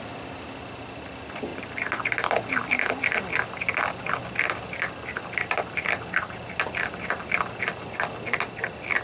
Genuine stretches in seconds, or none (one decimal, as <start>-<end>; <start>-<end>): 0.0-9.0